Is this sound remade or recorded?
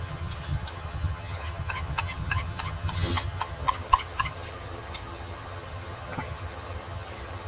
remade